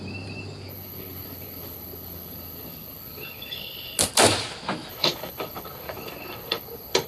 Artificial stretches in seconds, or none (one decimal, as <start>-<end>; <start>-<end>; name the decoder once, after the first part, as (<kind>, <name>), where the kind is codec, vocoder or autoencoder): 0.7-4.0 (codec, HILCodec); 4.9-7.1